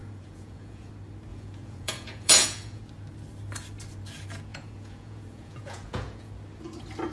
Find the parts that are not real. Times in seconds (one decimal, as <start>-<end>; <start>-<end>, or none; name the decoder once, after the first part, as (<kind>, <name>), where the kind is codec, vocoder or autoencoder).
0.0-0.9 (vocoder, Vocos); 1.3-2.8; 4.5-6.3